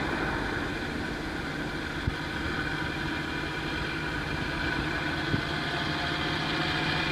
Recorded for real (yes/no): yes